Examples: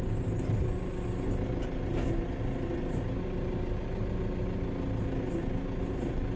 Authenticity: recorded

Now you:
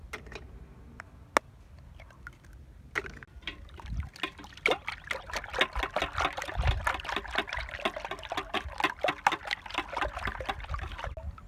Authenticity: recorded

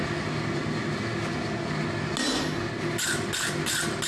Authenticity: recorded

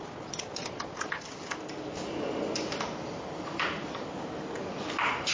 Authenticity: recorded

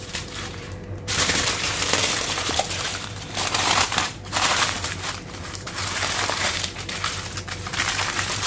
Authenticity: remade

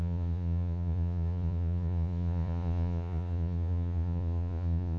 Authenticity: remade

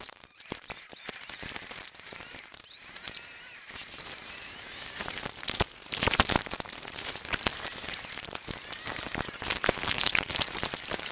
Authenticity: remade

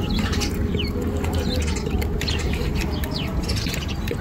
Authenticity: recorded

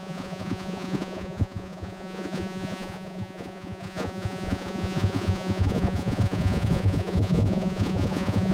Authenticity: remade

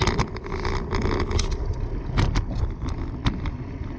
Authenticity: recorded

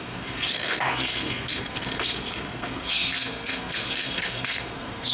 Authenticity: remade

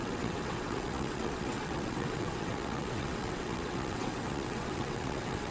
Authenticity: remade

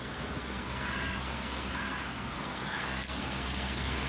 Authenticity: remade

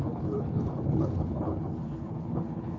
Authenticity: remade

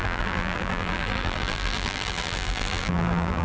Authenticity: remade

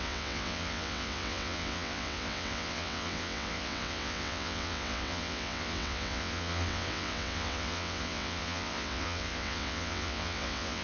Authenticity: remade